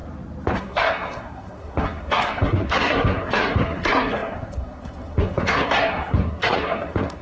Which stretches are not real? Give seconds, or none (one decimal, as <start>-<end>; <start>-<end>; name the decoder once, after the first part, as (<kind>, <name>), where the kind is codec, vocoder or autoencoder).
0.6-7.2 (codec, SNAC)

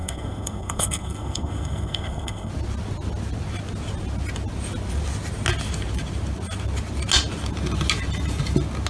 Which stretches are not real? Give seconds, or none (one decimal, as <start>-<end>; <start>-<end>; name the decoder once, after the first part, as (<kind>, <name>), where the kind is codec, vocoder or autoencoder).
0.0-2.5 (codec, SNAC)

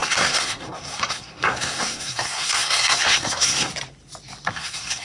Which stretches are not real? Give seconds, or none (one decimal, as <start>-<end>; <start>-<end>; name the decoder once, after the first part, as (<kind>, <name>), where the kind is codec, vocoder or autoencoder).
0.0-3.7 (codec, SNAC); 4.5-5.0